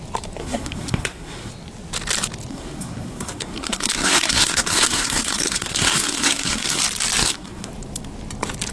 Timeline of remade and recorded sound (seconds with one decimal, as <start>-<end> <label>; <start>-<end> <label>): 0.0-0.4 recorded; 0.4-1.5 remade; 1.5-2.5 recorded; 2.5-6.8 remade; 6.8-7.2 recorded; 7.2-7.7 remade; 7.7-8.7 recorded